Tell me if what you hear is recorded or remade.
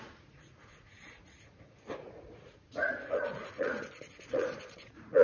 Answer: remade